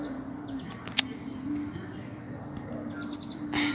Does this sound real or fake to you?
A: real